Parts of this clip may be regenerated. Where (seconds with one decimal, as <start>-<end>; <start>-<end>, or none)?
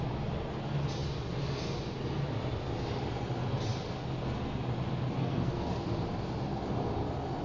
5.2-5.8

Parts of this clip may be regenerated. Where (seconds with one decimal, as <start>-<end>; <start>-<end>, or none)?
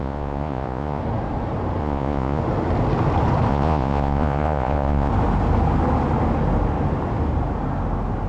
0.0-1.0; 1.8-2.4; 3.5-5.1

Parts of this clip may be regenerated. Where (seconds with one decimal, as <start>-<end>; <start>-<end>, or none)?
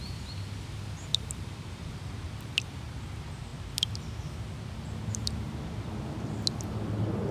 1.1-1.9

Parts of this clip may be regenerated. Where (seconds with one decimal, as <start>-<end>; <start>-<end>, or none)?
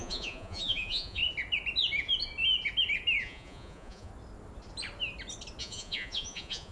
0.0-1.2; 3.2-4.1; 5.6-6.7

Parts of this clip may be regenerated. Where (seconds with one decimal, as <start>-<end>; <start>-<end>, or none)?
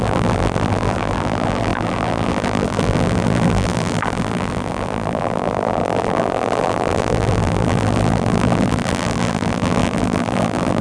0.0-10.8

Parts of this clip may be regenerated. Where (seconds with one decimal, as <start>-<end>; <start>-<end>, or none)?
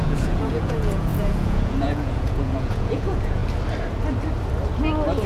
0.0-3.4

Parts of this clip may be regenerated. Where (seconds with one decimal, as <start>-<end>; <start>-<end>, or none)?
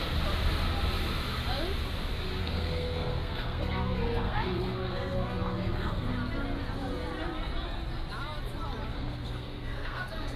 2.4-6.1; 8.9-10.4